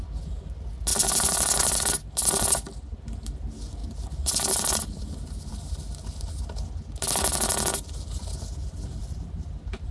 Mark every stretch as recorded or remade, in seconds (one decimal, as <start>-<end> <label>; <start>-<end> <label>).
0.0-0.9 recorded; 0.9-1.8 remade; 1.8-3.8 recorded; 3.8-5.0 remade; 5.0-9.0 recorded; 9.0-9.9 remade